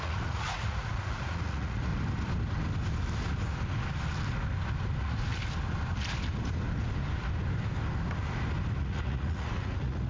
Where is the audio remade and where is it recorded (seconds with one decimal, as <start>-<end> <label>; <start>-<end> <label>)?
0.0-1.9 remade; 1.9-5.0 recorded; 5.0-5.4 remade; 5.4-8.8 recorded; 8.8-10.1 remade